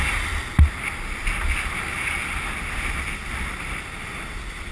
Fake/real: real